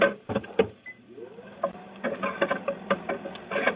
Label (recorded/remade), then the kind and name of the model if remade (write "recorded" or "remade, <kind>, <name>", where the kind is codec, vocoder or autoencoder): recorded